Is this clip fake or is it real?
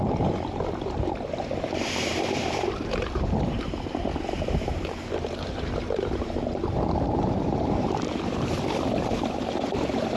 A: fake